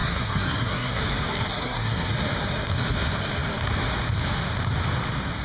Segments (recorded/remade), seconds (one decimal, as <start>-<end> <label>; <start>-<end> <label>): 0.0-1.0 remade; 1.0-1.5 recorded; 1.5-2.1 remade; 2.1-5.4 recorded